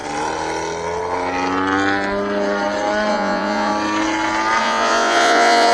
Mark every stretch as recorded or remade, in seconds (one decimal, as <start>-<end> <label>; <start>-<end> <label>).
0.0-3.1 recorded; 3.1-3.7 remade; 3.7-4.6 recorded; 4.6-5.7 remade